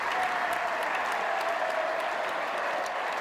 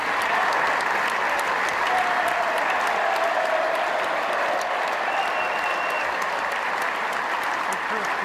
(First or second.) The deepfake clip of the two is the second